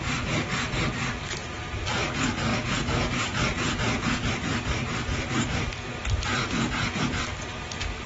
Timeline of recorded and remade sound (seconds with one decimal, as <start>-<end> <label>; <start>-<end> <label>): 0.0-2.5 recorded; 2.5-4.3 remade; 4.3-6.4 recorded; 6.4-7.0 remade; 7.0-8.1 recorded